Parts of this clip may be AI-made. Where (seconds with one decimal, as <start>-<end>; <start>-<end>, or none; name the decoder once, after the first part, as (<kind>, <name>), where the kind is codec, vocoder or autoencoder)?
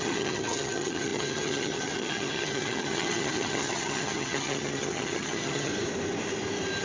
0.0-5.7 (vocoder, HiFi-GAN)